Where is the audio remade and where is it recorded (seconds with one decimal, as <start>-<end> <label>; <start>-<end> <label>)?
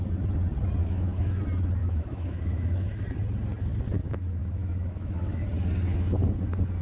0.0-0.8 recorded; 0.8-1.4 remade; 1.4-1.8 recorded; 1.8-3.0 remade; 3.0-4.0 recorded; 4.0-5.4 remade; 5.4-6.8 recorded